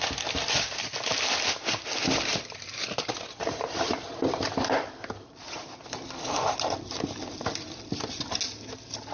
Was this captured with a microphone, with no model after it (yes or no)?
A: yes